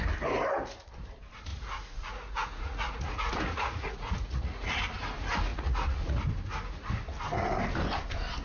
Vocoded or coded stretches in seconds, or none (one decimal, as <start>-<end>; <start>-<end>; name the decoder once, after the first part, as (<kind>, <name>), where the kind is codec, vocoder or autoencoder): 1.5-4.7 (vocoder, Vocos); 5.5-6.2